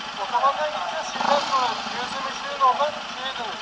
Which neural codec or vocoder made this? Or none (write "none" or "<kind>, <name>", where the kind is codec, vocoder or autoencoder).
none